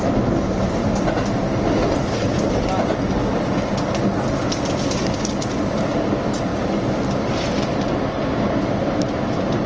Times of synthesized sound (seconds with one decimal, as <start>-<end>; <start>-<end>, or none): none